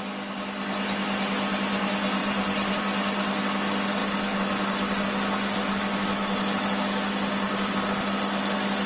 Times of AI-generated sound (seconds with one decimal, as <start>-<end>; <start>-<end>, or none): 2.2-2.8